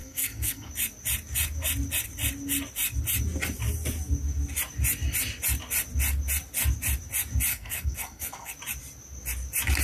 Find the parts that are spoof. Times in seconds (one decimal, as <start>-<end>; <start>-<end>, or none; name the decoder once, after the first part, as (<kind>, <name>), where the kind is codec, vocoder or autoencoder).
0.0-0.7 (codec, SNAC); 7.5-8.5